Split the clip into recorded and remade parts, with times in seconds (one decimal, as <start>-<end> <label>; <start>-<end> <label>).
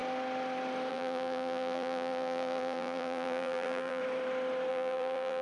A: 0.0-0.9 recorded; 0.9-4.0 remade; 4.0-4.7 recorded; 4.7-5.4 remade